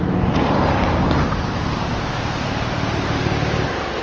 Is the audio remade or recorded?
remade